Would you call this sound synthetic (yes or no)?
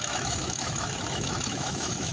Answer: yes